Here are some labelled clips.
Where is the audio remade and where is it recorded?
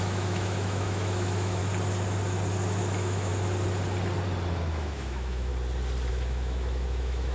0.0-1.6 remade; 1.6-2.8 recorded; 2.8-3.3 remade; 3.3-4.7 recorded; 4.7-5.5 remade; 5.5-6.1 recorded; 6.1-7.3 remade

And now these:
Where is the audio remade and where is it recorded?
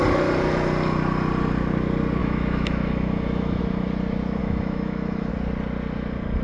0.0-2.2 recorded; 2.2-3.6 remade; 3.6-4.4 recorded; 4.4-5.3 remade; 5.3-6.4 recorded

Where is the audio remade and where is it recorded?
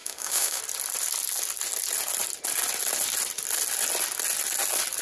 0.0-0.6 remade; 0.6-5.0 recorded